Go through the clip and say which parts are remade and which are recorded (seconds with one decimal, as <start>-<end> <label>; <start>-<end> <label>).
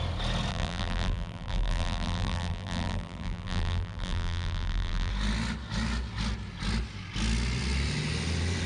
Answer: 0.0-0.5 recorded; 0.5-5.1 remade; 5.1-8.7 recorded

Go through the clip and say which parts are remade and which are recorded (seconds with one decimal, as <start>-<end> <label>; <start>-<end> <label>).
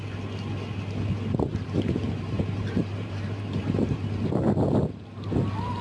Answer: 0.0-1.5 recorded; 1.5-4.0 remade; 4.0-5.8 recorded